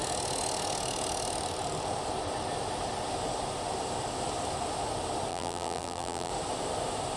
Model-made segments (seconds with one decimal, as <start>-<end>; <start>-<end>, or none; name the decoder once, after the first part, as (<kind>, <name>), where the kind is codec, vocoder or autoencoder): 5.3-6.3 (vocoder, BigVGAN v2)